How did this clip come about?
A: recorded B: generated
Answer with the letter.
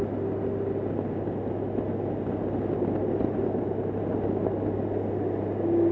A